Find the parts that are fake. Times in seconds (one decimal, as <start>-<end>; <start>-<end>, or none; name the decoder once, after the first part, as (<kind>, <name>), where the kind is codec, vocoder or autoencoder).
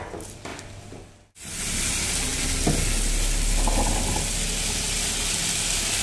none